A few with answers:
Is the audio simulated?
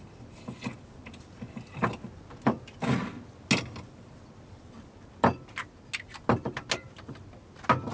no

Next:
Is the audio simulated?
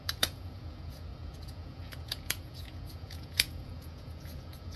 yes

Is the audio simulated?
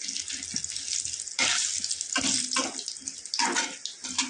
no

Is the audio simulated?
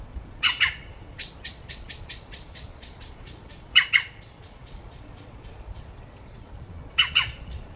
yes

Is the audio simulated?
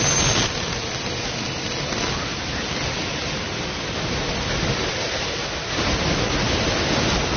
no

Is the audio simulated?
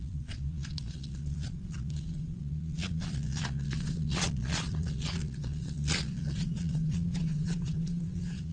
yes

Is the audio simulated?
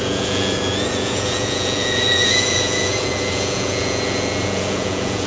yes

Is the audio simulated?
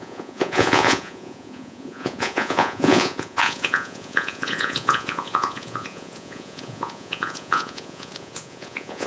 yes